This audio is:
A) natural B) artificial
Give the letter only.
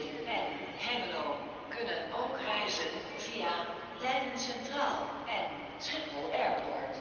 A